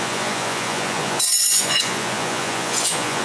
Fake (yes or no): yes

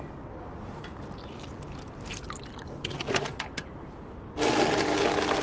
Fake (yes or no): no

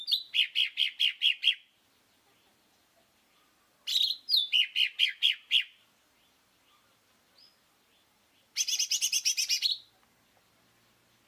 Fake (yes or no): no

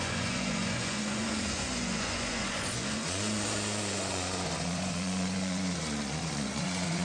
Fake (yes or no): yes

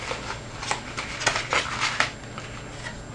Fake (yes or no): no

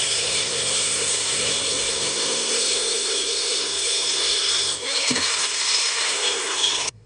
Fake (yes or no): yes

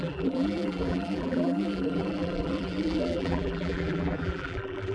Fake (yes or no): yes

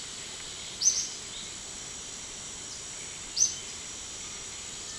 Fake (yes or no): no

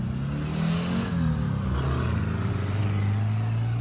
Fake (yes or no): no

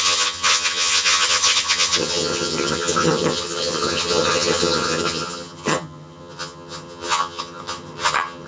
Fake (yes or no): yes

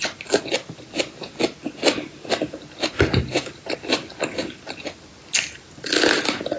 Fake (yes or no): no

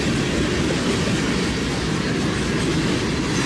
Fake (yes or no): no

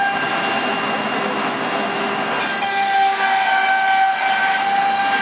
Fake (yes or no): no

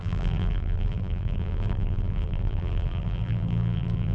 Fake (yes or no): yes